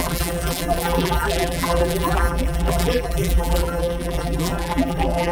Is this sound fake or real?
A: fake